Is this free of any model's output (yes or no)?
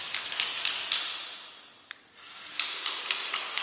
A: yes